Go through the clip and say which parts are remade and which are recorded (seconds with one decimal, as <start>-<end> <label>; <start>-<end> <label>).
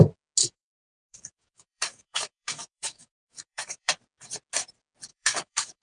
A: 0.0-0.4 recorded; 0.4-3.9 remade; 3.9-5.1 recorded; 5.1-5.8 remade